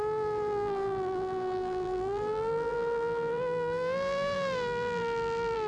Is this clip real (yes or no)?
no